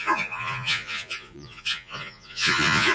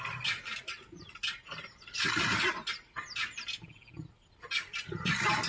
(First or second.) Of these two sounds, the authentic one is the second